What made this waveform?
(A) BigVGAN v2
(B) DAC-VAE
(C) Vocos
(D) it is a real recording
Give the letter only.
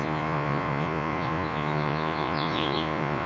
C